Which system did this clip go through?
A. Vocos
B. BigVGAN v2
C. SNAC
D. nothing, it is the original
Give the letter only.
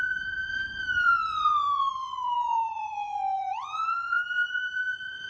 A